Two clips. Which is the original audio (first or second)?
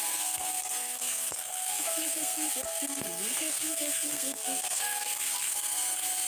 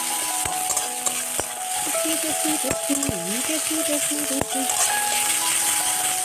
second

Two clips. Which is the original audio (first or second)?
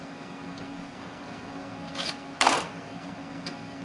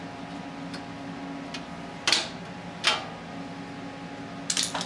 second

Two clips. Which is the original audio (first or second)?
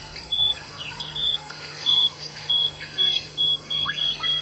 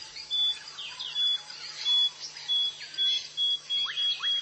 second